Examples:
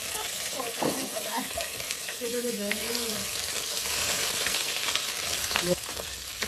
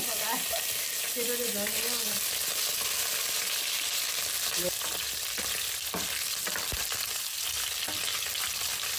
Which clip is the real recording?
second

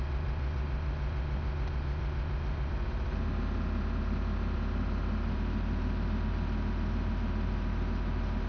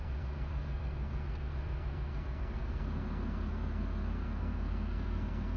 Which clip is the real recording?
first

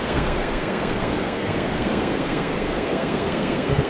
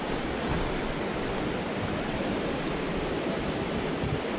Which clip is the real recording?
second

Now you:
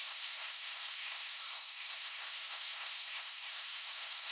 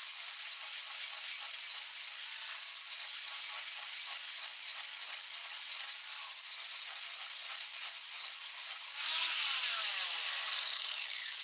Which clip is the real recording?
second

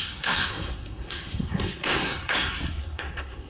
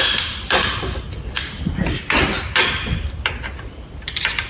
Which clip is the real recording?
second